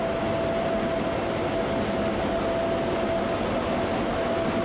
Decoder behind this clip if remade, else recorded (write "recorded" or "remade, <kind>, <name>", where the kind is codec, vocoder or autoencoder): recorded